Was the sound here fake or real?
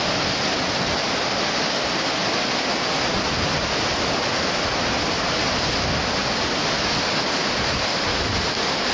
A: real